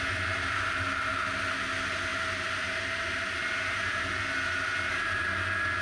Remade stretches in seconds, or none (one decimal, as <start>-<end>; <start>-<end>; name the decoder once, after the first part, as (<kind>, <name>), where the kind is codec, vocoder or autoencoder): none